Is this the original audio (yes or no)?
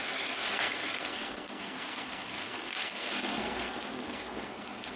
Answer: no